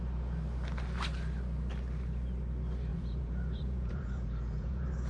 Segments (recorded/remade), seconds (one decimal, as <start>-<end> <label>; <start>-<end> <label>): 0.0-2.9 recorded; 2.9-5.1 remade